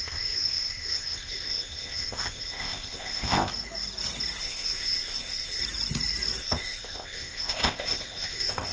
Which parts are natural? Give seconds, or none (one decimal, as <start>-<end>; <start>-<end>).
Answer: 3.5-4.4; 5.6-6.4